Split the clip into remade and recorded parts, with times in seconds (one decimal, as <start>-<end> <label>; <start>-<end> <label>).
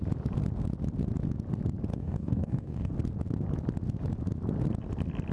0.0-1.9 recorded; 1.9-2.9 remade; 2.9-5.3 recorded